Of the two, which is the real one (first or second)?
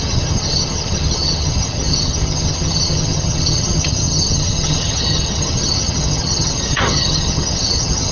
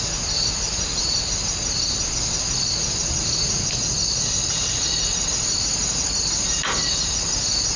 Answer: second